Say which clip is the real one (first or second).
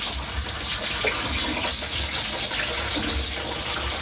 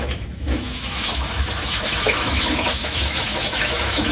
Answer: first